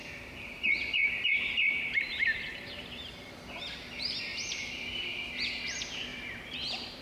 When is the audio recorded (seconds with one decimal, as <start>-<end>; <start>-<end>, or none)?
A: 3.3-4.3; 5.4-6.1